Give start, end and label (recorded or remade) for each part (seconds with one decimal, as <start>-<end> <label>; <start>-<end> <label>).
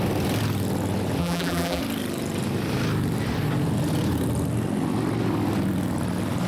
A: 0.0-1.2 recorded; 1.2-1.8 remade; 1.8-6.5 recorded